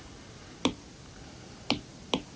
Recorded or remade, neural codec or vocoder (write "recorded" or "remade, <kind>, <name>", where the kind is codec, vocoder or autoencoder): recorded